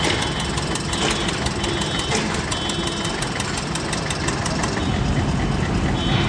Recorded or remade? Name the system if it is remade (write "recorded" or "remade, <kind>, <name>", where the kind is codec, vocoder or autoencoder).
recorded